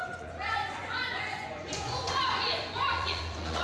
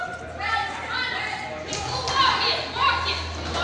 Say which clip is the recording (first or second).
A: second